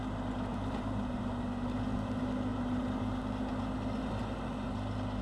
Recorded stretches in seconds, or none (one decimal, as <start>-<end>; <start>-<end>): 0.0-0.5; 1.2-2.5; 3.3-5.2